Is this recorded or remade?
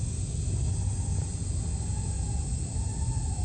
recorded